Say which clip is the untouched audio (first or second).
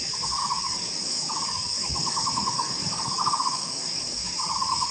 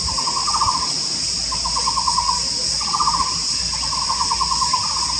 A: second